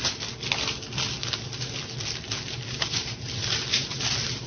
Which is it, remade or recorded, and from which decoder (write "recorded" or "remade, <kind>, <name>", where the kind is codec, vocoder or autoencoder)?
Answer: recorded